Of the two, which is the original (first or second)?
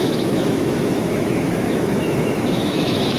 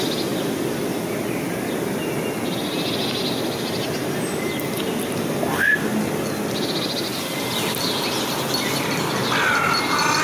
second